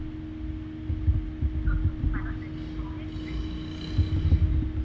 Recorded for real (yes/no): yes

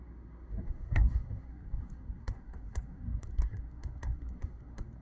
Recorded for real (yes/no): no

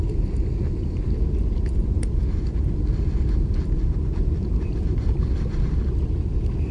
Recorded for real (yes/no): yes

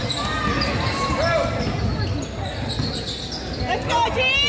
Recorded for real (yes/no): yes